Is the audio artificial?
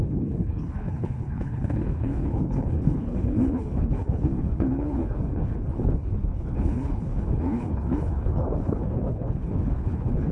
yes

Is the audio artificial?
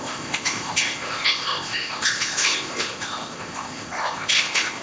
yes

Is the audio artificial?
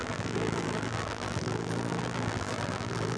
yes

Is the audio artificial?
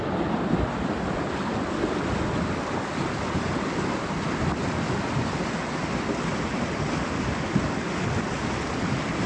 no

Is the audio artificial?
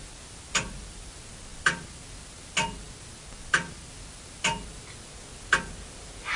no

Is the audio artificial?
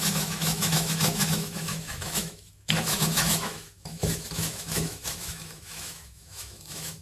yes